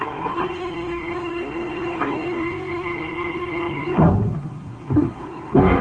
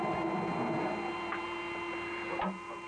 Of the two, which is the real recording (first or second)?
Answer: second